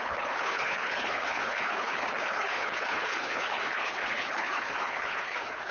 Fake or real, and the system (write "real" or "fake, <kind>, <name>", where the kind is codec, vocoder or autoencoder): fake, codec, HILCodec